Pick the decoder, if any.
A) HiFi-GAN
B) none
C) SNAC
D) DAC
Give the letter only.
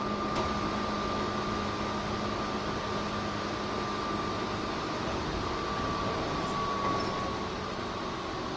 B